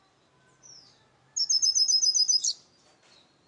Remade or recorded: recorded